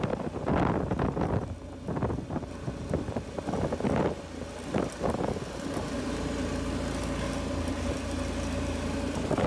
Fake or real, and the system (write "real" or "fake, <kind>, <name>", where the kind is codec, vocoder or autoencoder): real